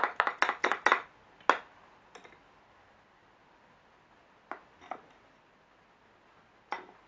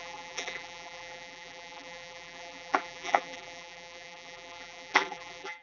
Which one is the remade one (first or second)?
second